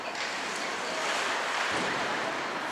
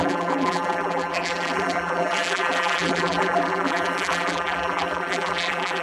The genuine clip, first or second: first